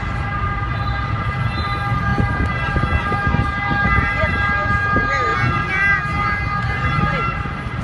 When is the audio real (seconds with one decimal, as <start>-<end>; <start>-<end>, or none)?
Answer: 0.0-7.8